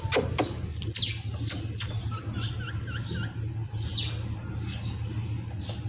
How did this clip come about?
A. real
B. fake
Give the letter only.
A